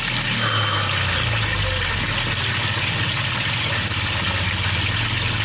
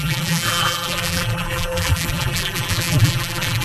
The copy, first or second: second